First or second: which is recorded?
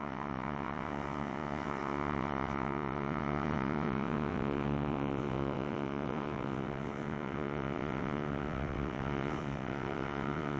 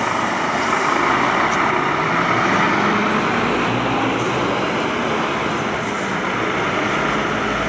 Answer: second